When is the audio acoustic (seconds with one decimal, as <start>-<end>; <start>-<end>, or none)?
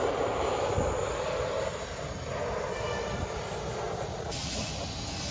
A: 0.0-4.1; 4.7-5.3